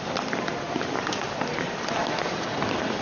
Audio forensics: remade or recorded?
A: recorded